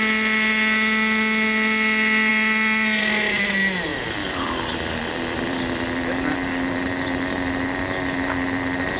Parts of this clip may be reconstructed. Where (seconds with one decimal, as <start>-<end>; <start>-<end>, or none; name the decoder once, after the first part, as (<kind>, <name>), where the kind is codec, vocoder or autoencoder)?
3.9-5.6 (vocoder, BigVGAN v2)